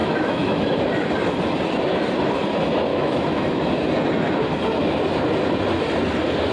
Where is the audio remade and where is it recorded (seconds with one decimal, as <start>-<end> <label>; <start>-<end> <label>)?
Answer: 0.0-0.6 remade; 0.6-2.9 recorded; 2.9-3.7 remade; 3.7-6.5 recorded